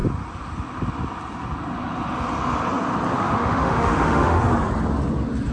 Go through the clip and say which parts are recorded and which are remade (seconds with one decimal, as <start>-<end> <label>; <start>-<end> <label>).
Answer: 0.0-3.1 recorded; 3.1-4.5 remade; 4.5-5.5 recorded

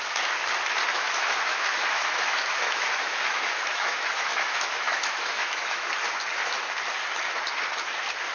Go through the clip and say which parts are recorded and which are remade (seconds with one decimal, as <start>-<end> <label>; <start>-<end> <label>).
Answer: 0.0-0.9 recorded; 0.9-5.9 remade; 5.9-8.3 recorded

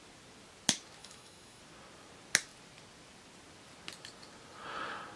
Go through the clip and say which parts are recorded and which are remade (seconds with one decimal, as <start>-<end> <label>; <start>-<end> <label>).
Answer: 0.0-1.0 recorded; 1.0-1.6 remade; 1.6-5.2 recorded

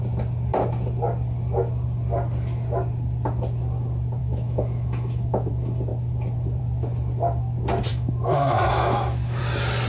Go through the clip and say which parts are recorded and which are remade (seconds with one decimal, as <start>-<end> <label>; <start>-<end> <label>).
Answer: 0.0-4.2 recorded; 4.2-5.5 remade; 5.5-7.9 recorded; 7.9-9.4 remade; 9.4-9.9 recorded